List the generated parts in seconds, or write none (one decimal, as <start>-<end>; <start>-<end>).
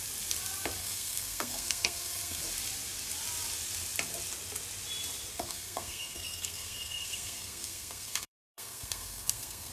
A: 0.8-2.4; 5.3-9.7